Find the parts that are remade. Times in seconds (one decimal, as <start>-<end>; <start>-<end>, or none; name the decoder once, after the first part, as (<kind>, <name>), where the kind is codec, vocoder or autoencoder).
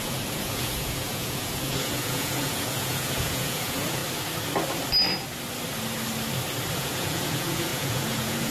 0.0-4.0 (vocoder, Vocos); 6.7-8.5